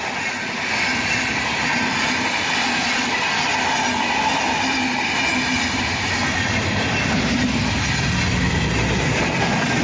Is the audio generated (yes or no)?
no